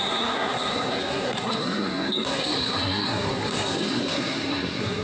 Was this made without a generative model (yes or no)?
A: no